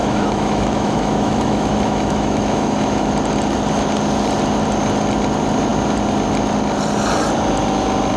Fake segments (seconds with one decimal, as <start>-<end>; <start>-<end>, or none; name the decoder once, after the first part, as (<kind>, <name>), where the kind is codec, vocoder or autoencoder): 0.0-3.1 (autoencoder, DAC-VAE)